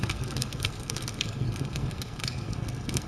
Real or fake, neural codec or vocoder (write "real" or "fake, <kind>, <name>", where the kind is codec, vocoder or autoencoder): fake, codec, SNAC